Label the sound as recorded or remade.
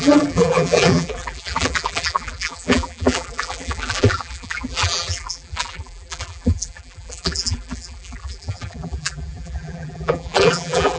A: remade